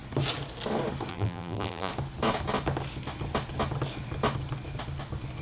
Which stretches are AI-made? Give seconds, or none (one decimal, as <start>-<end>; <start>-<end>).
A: 1.1-1.9